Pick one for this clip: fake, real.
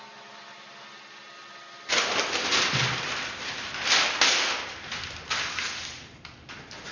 real